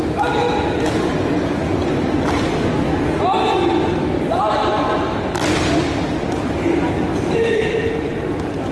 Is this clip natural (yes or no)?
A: yes